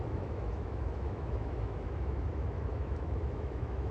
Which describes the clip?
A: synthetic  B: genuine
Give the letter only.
A